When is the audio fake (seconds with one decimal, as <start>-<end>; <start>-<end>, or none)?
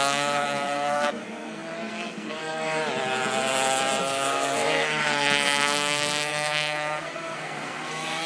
0.0-2.8; 4.0-8.3